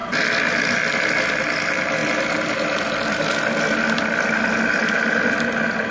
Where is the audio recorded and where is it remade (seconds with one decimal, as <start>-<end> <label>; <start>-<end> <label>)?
0.0-5.9 recorded